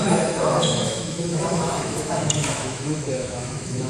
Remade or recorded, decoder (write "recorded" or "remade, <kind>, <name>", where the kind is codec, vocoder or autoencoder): remade, autoencoder, DAC-VAE